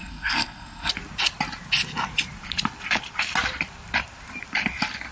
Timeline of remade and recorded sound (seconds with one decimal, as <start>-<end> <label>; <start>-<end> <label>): 0.0-0.9 remade; 0.9-5.1 recorded